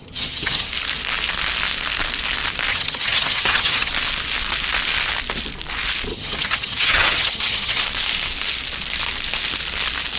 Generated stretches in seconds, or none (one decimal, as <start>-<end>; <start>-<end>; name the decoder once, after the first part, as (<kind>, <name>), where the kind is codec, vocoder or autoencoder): 0.0-0.7 (vocoder, HiFi-GAN); 2.7-3.9; 6.1-7.8